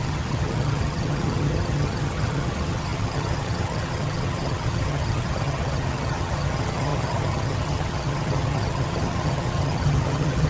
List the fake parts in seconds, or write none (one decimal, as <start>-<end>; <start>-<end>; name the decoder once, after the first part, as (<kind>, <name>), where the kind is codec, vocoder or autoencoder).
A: 0.0-10.5 (vocoder, HiFi-GAN)